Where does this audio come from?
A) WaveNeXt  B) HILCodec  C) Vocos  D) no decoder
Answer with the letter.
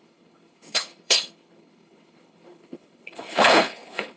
B